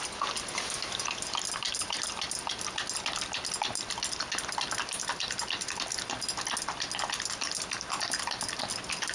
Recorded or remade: recorded